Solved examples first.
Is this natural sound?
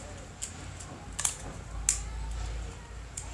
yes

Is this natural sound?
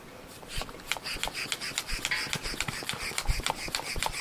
no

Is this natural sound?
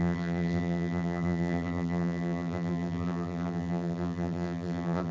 no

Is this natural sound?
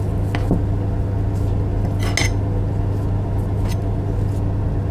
yes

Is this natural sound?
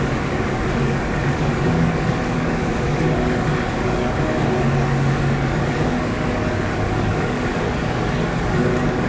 no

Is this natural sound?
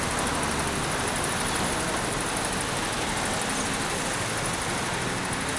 yes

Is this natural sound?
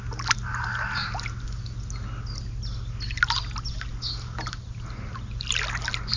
yes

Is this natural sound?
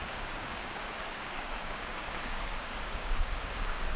no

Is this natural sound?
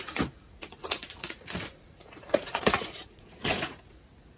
no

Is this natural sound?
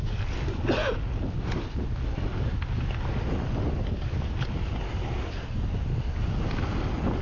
yes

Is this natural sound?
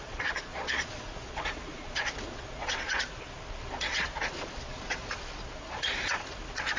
no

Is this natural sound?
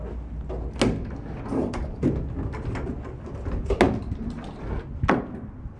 yes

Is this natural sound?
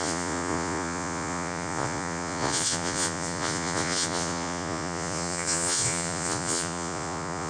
no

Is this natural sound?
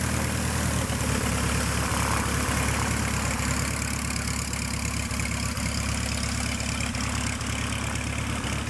yes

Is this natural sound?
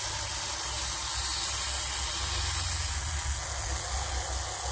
yes